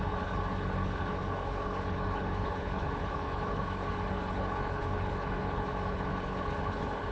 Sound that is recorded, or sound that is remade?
remade